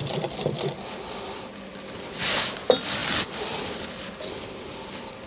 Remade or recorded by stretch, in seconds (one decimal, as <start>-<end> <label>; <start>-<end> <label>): 0.0-5.3 recorded

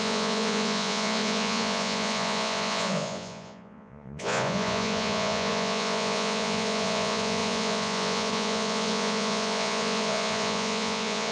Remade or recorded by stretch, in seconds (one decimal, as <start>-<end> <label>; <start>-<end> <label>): 0.0-11.3 remade

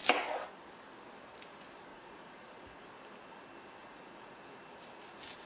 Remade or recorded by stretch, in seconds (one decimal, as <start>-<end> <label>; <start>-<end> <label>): 0.0-1.9 recorded; 1.9-2.8 remade; 2.8-3.8 recorded; 3.8-4.4 remade; 4.4-5.5 recorded

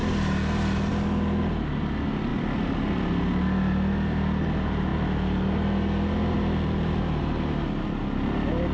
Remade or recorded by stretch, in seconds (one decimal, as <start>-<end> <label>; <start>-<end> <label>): 0.0-8.7 recorded

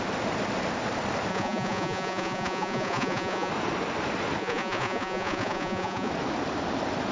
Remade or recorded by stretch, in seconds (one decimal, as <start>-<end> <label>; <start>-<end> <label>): 0.0-1.3 recorded; 1.3-3.5 remade; 3.5-4.4 recorded; 4.4-6.1 remade; 6.1-7.1 recorded